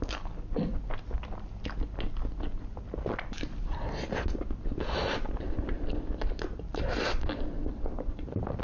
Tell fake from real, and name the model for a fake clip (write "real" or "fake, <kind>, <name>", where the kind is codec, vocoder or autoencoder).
real